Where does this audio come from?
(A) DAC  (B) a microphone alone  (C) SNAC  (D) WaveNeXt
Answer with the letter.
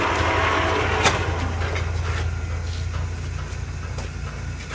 B